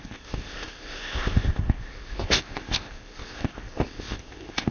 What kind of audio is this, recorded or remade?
remade